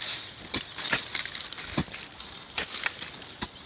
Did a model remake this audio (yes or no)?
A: no